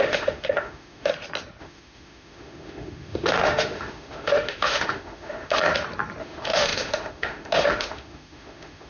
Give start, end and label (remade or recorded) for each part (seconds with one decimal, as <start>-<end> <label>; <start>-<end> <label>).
0.0-1.1 remade; 1.1-1.6 recorded; 1.6-5.6 remade; 5.6-6.2 recorded; 6.2-8.9 remade